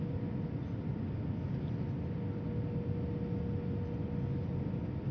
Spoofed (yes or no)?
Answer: no